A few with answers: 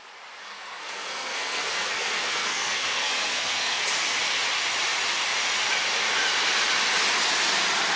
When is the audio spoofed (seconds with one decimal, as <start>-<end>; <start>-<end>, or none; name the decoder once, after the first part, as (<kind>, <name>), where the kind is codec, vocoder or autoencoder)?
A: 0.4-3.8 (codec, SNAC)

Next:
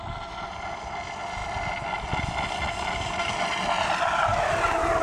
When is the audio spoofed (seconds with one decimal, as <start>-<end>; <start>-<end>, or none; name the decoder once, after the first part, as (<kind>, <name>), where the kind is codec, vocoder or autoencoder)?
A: none

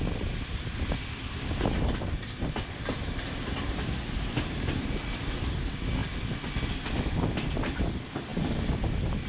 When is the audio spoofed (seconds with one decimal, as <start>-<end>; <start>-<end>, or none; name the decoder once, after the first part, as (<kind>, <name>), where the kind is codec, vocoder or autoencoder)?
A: none